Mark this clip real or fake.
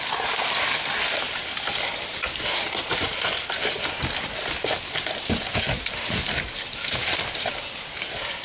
real